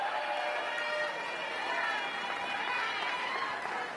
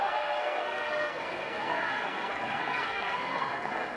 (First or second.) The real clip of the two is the first